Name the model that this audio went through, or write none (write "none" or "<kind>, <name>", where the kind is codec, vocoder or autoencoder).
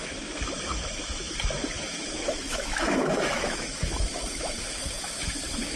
autoencoder, DAC-VAE